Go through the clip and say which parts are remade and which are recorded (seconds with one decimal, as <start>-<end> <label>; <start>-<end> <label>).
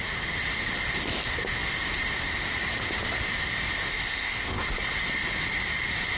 0.0-3.9 recorded; 3.9-4.6 remade; 4.6-6.2 recorded